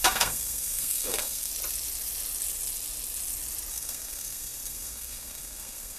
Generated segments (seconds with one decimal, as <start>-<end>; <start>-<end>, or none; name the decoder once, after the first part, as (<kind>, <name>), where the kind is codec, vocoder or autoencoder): 0.0-1.5 (codec, SNAC); 3.7-6.0

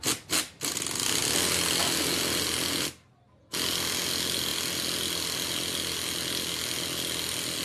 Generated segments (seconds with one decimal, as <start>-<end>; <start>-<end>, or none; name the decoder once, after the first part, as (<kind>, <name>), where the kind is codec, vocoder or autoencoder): none